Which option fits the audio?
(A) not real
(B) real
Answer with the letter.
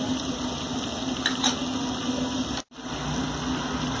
B